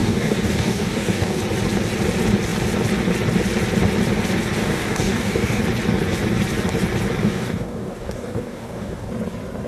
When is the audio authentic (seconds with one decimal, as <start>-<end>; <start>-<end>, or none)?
1.4-4.6; 5.6-7.2; 9.1-9.7

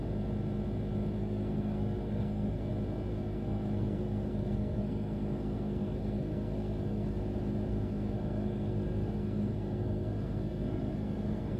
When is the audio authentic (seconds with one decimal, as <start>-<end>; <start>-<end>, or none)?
0.0-1.2; 2.7-3.1; 7.2-7.7

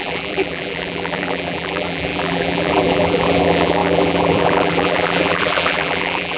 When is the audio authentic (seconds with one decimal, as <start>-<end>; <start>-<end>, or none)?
none

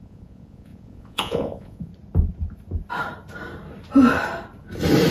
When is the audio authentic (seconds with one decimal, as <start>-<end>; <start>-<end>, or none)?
1.9-5.1

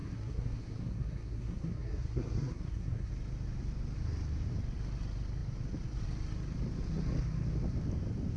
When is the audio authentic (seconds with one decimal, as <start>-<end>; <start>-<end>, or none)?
3.1-8.4

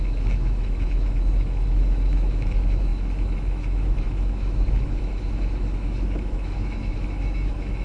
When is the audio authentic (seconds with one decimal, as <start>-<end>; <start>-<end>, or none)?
none